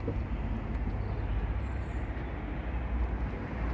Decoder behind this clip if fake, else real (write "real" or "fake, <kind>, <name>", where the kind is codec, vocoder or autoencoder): real